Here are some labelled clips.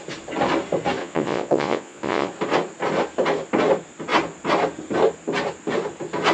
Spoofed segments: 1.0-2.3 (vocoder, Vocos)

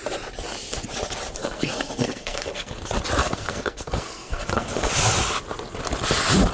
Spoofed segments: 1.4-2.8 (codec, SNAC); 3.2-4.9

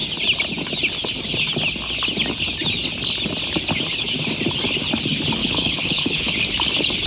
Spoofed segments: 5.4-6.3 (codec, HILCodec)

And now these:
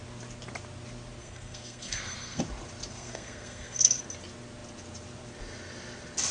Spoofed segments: 1.2-2.4 (codec, SNAC); 2.9-4.0